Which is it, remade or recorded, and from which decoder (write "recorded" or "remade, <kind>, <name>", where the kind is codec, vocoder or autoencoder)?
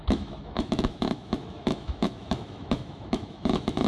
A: remade, autoencoder, DAC-VAE